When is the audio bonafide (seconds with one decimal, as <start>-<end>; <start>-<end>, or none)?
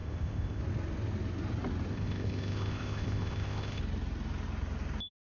0.6-1.9; 3.8-5.2